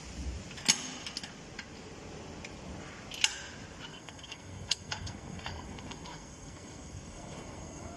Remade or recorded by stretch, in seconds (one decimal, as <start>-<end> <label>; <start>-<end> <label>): 0.0-3.9 recorded; 3.9-8.0 remade